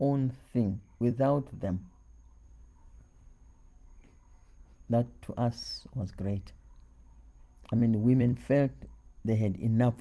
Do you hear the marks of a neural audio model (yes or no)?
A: yes